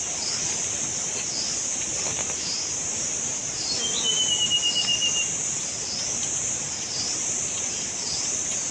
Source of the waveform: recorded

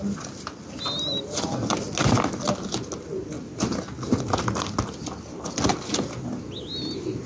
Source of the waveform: recorded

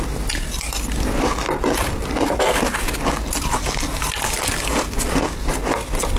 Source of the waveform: recorded